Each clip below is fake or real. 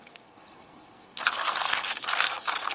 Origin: fake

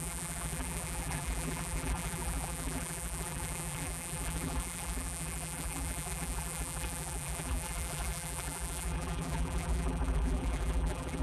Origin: fake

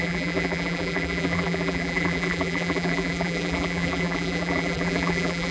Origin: fake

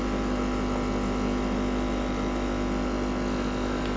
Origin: real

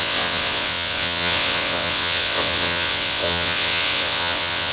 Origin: fake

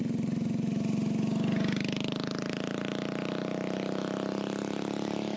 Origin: real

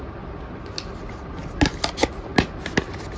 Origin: real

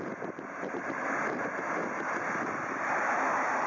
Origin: real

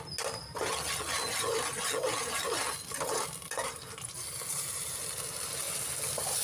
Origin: real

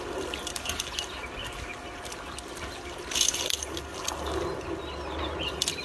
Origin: real